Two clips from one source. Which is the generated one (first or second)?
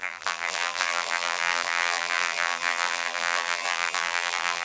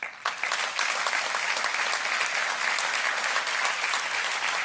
first